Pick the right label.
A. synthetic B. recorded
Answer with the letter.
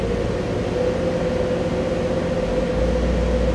B